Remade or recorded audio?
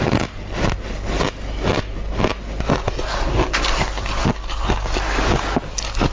recorded